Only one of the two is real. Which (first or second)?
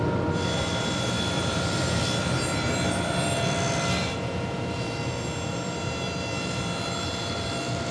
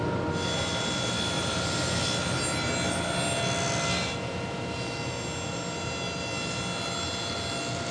second